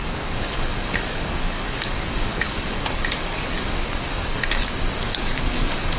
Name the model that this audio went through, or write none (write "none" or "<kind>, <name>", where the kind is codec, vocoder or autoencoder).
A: codec, DAC